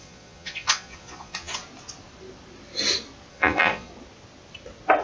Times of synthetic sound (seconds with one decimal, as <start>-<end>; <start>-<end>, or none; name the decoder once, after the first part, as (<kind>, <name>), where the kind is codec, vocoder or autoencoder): 0.0-1.6 (vocoder, Vocos); 3.3-3.9